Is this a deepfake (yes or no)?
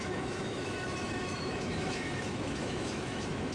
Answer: yes